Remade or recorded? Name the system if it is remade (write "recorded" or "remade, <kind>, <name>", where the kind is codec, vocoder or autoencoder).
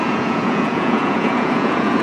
remade, vocoder, Vocos